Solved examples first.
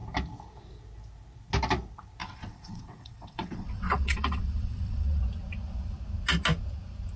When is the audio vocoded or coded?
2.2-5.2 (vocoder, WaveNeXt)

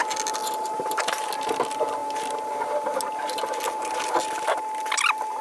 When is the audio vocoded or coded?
none

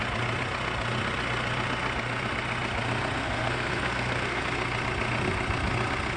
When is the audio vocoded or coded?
3.2-4.4 (codec, SNAC)

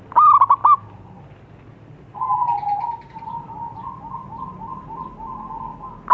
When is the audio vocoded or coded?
0.6-1.2 (vocoder, BigVGAN v2)

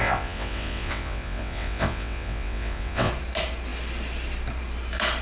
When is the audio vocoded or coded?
0.0-3.1 (vocoder, WaveNeXt)

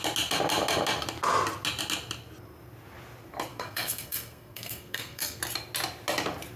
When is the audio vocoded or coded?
3.5-5.4 (codec, SNAC)